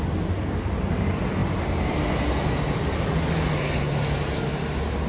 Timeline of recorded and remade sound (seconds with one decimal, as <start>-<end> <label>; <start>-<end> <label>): 0.0-5.1 recorded